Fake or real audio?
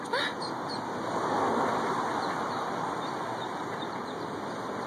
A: fake